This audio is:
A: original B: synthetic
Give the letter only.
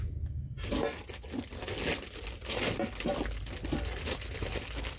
A